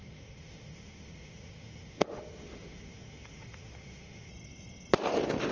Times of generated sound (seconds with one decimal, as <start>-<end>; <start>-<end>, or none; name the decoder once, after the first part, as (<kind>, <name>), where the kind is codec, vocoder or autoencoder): 0.0-4.3 (autoencoder, DAC-VAE)